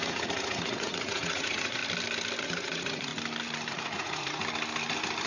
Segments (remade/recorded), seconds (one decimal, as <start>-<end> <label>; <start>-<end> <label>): 0.0-1.8 remade; 1.8-2.4 recorded; 2.4-3.1 remade; 3.1-3.7 recorded; 3.7-4.4 remade; 4.4-5.3 recorded